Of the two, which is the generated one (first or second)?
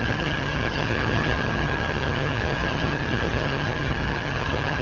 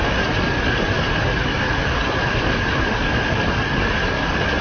first